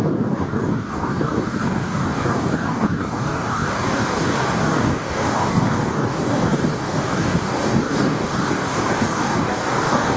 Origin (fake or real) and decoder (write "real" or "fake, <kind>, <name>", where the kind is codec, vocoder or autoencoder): fake, codec, DAC